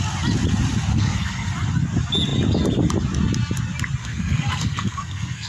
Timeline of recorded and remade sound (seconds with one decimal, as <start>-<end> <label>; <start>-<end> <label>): 0.0-0.9 recorded; 0.9-1.5 remade; 1.5-4.0 recorded; 4.0-5.5 remade